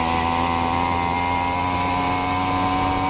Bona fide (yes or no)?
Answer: yes